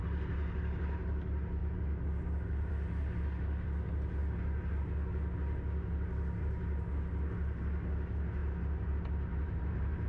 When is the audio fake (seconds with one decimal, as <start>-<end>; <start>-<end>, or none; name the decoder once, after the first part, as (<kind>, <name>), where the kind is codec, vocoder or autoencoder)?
9.3-10.1 (vocoder, BigVGAN v2)